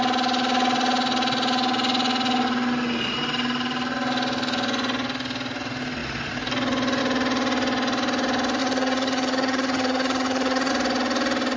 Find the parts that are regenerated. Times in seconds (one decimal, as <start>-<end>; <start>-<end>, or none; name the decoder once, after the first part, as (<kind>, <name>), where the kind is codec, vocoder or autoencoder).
8.6-10.7 (vocoder, HiFi-GAN)